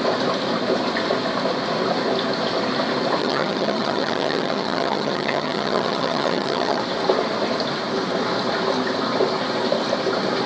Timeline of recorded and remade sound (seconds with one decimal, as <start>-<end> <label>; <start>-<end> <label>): 0.0-3.2 recorded; 3.2-6.8 remade; 6.8-10.5 recorded